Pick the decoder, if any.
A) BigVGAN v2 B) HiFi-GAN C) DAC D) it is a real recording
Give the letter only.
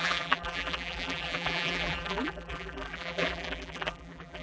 A